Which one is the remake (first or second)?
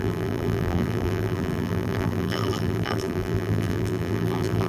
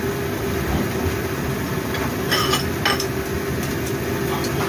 first